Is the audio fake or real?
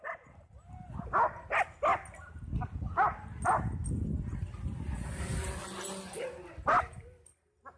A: real